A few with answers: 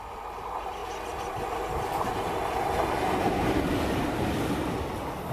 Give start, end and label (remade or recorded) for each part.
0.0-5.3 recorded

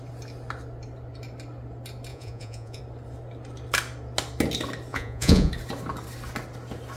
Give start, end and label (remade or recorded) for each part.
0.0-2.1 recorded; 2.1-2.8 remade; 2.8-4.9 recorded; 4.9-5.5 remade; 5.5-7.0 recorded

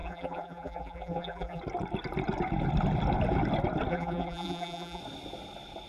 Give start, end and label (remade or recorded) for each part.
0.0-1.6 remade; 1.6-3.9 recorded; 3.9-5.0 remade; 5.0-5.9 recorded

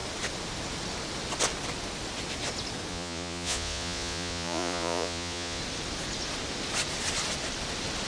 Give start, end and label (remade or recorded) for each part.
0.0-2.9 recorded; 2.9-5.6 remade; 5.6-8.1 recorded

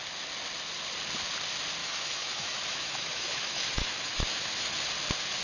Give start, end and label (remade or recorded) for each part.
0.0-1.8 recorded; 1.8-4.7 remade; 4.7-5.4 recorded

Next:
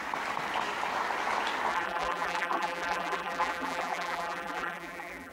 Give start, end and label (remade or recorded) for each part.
0.0-1.7 recorded; 1.7-5.3 remade